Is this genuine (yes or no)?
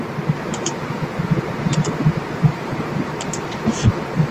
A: no